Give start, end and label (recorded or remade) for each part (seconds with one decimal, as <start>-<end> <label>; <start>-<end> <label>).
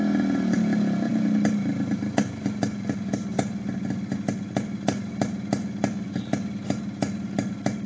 0.0-7.9 recorded